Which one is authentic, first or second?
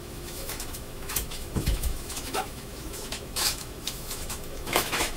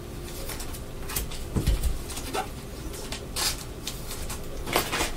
second